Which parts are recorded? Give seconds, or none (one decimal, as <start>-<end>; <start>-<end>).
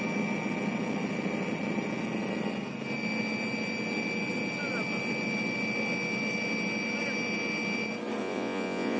0.0-8.2